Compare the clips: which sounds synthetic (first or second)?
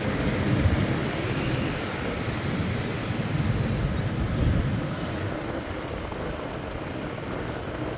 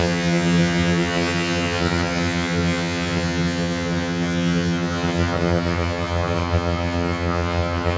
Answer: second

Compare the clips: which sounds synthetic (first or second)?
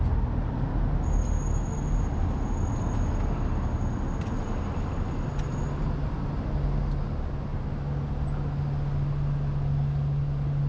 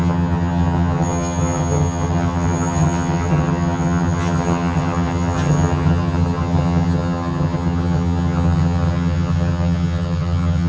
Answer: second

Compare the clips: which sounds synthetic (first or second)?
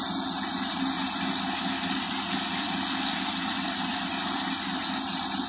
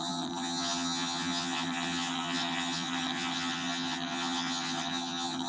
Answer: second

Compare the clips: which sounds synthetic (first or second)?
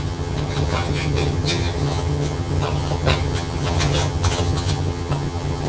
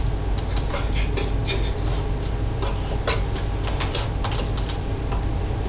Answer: first